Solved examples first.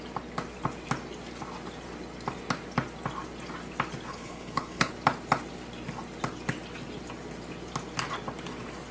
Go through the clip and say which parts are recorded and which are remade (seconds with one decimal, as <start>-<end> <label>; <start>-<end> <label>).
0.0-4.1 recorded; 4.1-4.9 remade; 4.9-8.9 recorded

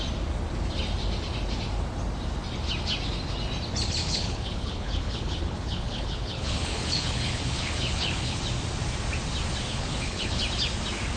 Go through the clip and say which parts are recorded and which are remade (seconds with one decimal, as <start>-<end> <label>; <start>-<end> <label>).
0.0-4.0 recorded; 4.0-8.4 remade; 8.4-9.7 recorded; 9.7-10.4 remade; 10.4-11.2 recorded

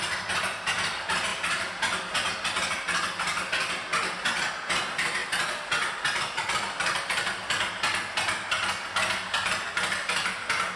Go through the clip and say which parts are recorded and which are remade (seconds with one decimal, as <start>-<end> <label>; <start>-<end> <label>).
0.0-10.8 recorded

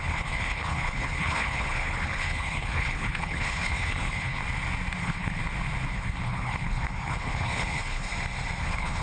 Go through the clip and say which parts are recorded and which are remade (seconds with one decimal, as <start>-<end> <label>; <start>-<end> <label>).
0.0-4.4 remade; 4.4-5.0 recorded; 5.0-5.4 remade; 5.4-5.9 recorded; 5.9-8.1 remade; 8.1-8.6 recorded; 8.6-9.0 remade

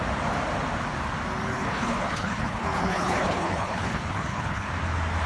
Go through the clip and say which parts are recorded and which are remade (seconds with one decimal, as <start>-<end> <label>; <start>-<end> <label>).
0.0-1.5 recorded; 1.5-4.7 remade; 4.7-5.3 recorded

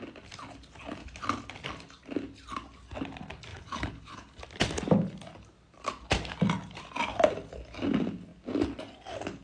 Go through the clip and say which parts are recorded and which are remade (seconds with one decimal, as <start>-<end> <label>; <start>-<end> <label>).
0.0-3.5 recorded; 3.5-4.4 remade; 4.4-9.4 recorded